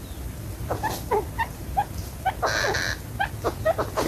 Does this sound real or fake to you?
real